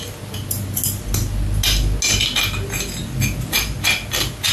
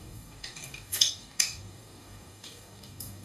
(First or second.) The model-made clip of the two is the second